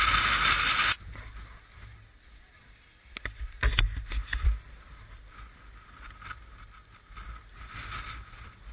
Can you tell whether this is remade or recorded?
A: recorded